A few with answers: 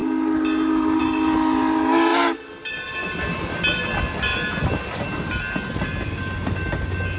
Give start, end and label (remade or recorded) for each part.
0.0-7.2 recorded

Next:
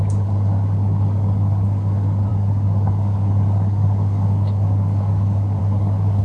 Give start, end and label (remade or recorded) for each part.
0.0-6.2 remade

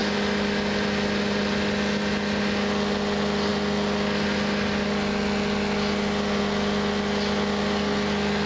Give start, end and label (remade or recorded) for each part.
0.0-8.5 recorded

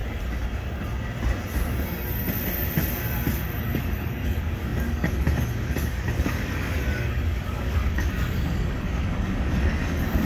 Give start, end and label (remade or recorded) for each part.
0.0-3.6 recorded; 3.6-10.3 remade

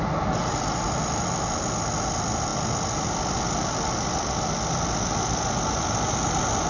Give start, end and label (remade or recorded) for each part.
0.0-6.7 recorded

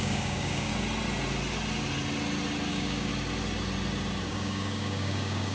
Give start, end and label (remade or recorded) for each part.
0.0-0.7 remade; 0.7-2.7 recorded; 2.7-3.1 remade; 3.1-4.3 recorded; 4.3-5.5 remade

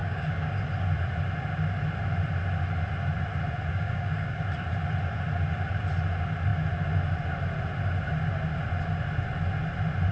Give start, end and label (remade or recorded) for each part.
0.0-0.6 remade; 0.6-3.7 recorded; 3.7-4.4 remade; 4.4-10.1 recorded

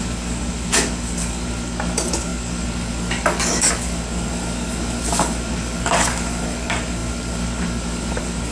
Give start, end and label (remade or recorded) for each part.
0.0-8.5 remade